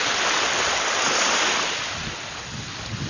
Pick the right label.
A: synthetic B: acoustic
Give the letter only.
B